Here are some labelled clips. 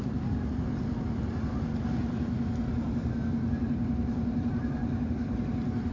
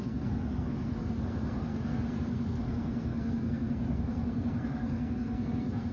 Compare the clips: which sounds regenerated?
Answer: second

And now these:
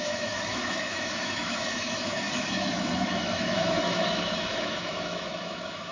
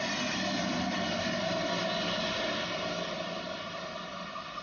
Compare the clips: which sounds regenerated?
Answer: first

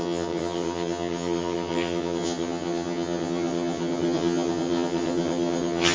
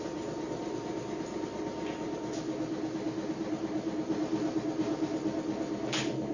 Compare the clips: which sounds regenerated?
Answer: first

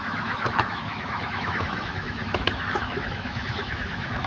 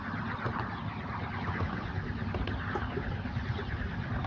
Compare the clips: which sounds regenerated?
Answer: first